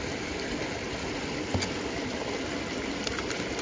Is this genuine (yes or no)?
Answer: yes